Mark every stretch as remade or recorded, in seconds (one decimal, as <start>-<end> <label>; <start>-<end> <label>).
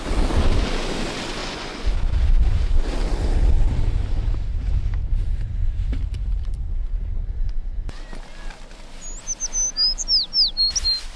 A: 0.0-1.4 recorded; 1.4-1.9 remade; 1.9-7.2 recorded; 7.2-8.0 remade; 8.0-11.2 recorded